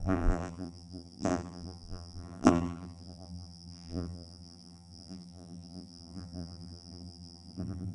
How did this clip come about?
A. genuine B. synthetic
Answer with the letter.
B